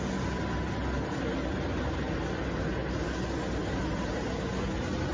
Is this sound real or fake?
real